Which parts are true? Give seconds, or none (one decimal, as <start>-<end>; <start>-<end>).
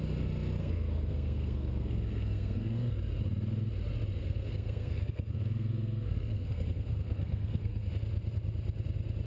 0.0-0.6; 2.9-4.2; 7.9-9.3